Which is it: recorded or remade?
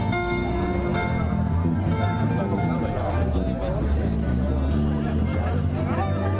recorded